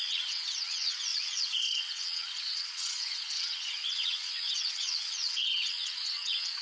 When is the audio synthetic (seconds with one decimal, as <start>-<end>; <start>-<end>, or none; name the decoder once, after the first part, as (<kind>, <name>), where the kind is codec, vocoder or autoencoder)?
0.0-6.6 (vocoder, WaveNeXt)